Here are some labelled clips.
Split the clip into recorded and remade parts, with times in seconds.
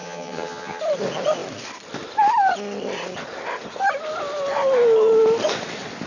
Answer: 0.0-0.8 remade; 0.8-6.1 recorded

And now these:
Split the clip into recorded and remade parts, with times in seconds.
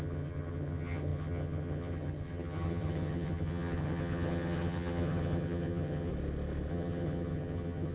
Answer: 0.0-6.1 remade; 6.1-6.7 recorded; 6.7-7.9 remade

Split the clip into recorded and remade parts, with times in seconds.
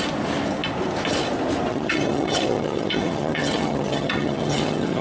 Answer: 0.0-1.7 recorded; 1.7-5.0 remade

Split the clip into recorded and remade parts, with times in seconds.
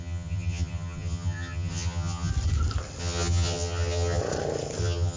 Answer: 0.0-2.3 remade; 2.3-3.0 recorded; 3.0-4.2 remade; 4.2-4.8 recorded; 4.8-5.2 remade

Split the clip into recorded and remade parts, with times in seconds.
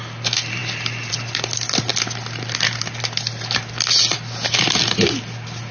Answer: 0.0-5.7 recorded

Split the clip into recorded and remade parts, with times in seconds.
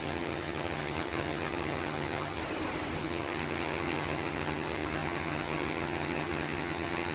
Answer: 0.0-2.4 remade; 2.4-3.0 recorded; 3.0-7.1 remade